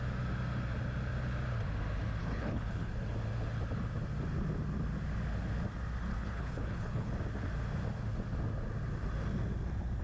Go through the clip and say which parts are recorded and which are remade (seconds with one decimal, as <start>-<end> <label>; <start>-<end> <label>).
0.0-2.2 recorded; 2.2-2.9 remade; 2.9-6.1 recorded; 6.1-7.1 remade; 7.1-10.0 recorded